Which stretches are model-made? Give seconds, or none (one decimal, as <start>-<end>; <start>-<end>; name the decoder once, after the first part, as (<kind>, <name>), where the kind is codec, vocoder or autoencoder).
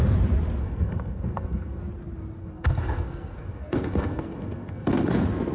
0.6-1.8 (codec, SNAC); 2.4-5.1